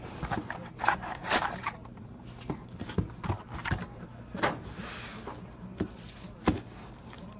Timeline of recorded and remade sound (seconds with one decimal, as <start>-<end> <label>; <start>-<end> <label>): 0.0-5.1 remade; 5.1-6.9 recorded; 6.9-7.4 remade